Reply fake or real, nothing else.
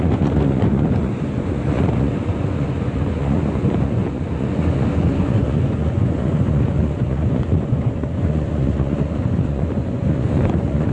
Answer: fake